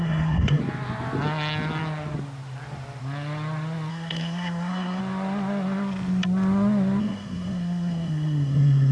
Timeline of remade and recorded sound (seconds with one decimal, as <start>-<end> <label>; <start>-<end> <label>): 0.0-0.6 remade; 0.6-3.9 recorded; 3.9-5.0 remade; 5.0-7.0 recorded; 7.0-8.9 remade